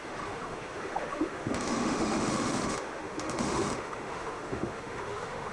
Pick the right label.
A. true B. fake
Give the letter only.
B